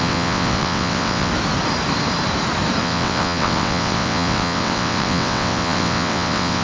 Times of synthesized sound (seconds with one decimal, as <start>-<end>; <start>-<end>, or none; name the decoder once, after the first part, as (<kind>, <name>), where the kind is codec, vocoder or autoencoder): 0.0-1.3 (vocoder, WaveNeXt); 2.8-6.6